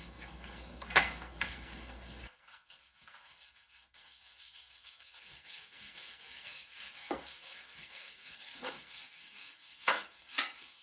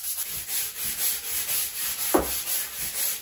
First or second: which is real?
second